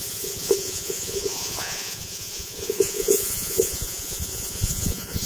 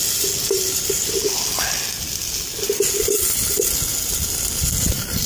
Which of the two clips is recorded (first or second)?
second